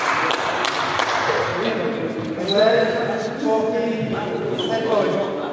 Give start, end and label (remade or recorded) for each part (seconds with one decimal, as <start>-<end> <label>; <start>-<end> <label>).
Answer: 0.0-5.5 recorded